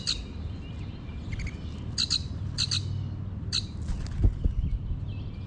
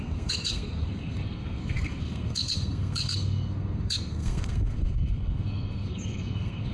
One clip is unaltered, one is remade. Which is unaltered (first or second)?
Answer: first